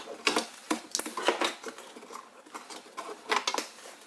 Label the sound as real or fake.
real